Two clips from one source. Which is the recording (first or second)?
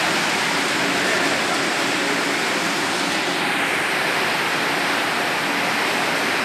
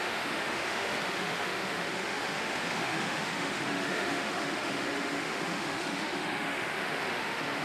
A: first